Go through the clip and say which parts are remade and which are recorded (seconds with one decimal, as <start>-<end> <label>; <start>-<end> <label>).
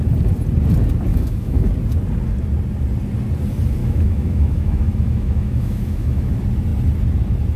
0.0-1.1 recorded; 1.1-1.7 remade; 1.7-3.8 recorded; 3.8-6.3 remade; 6.3-7.6 recorded